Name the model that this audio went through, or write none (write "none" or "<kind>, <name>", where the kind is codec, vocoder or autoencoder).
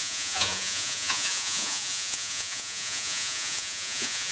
vocoder, Vocos